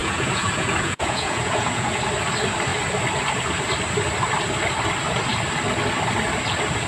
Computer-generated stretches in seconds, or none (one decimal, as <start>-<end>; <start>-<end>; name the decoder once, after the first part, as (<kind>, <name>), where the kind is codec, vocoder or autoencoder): 0.0-2.0 (vocoder, Vocos)